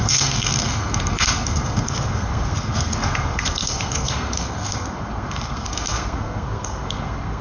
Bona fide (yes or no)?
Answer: no